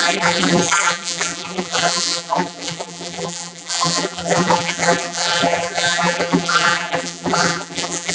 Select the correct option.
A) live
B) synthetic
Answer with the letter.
B